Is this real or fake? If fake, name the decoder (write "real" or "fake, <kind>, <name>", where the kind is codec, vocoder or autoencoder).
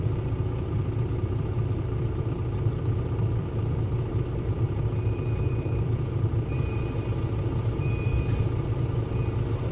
fake, vocoder, BigVGAN v2